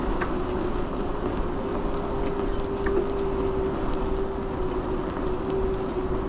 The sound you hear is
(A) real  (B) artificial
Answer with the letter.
A